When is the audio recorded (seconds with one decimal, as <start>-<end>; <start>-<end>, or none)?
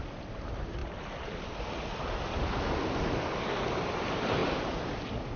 0.0-5.4